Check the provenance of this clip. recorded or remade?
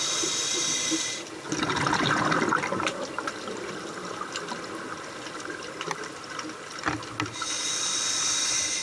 recorded